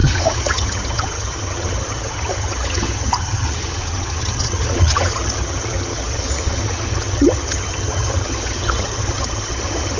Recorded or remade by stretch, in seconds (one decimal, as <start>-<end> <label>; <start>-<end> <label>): 0.0-10.0 remade